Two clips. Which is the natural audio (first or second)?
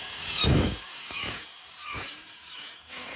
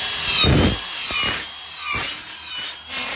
second